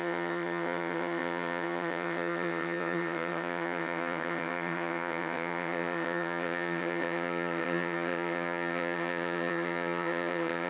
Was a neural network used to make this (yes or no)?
yes